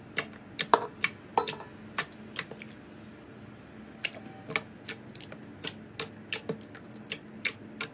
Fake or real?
real